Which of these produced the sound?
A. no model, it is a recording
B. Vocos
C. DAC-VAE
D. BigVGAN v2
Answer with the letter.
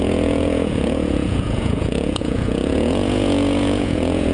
B